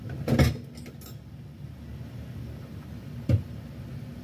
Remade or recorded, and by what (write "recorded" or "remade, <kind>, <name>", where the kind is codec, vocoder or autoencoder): recorded